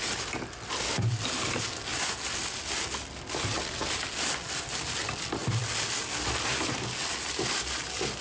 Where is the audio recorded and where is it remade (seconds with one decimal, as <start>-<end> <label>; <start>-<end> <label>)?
0.0-8.2 recorded